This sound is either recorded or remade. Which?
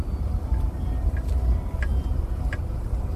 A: recorded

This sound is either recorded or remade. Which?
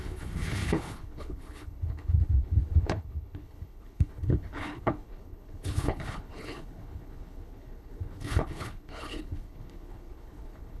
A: remade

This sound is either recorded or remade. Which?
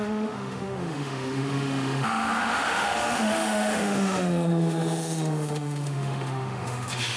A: remade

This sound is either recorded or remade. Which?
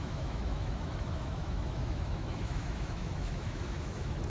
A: remade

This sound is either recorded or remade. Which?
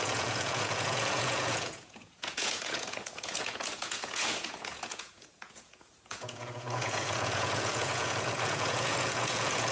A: remade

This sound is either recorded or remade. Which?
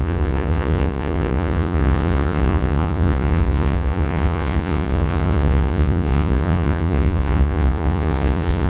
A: remade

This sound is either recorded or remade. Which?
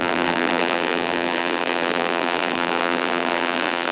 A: remade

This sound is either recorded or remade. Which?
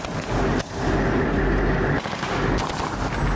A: recorded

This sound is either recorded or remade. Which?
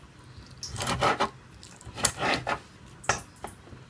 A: recorded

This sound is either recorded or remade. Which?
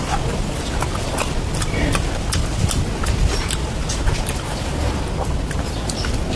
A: recorded